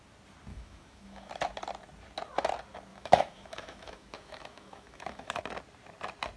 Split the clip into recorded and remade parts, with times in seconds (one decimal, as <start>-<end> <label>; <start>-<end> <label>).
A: 0.0-0.5 recorded; 0.5-1.3 remade; 1.3-2.9 recorded; 2.9-5.4 remade; 5.4-6.4 recorded